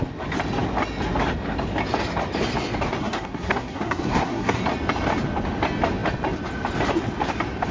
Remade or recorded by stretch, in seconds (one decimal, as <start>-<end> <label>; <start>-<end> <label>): 0.0-3.0 recorded; 3.0-4.6 remade; 4.6-7.7 recorded